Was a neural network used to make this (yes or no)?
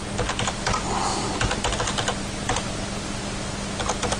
no